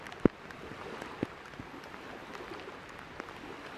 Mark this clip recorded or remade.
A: recorded